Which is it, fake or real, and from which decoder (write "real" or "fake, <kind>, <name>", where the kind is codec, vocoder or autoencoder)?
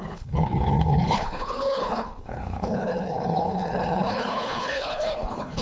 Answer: fake, codec, HILCodec